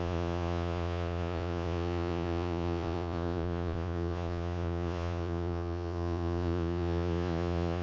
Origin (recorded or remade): remade